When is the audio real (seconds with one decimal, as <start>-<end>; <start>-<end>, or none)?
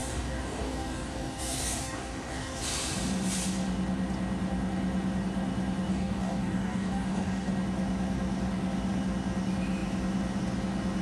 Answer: 2.6-5.9; 7.5-11.0